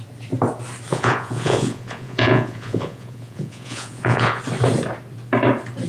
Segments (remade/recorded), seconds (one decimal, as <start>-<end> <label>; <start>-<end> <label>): 0.0-0.9 recorded; 0.9-4.4 remade; 4.4-5.9 recorded